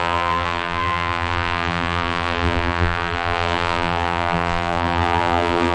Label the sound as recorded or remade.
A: remade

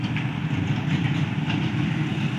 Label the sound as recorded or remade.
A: recorded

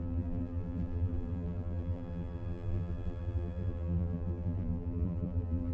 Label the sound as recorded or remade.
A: remade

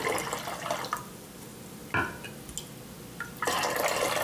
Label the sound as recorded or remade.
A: recorded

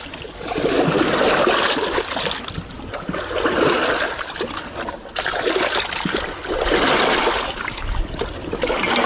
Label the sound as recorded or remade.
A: recorded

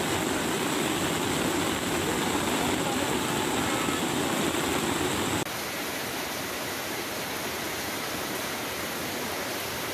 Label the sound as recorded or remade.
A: recorded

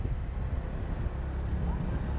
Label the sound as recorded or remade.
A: recorded